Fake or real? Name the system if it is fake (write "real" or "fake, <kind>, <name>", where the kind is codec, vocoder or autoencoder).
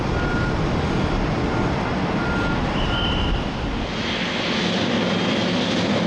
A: real